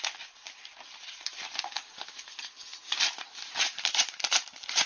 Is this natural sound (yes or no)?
no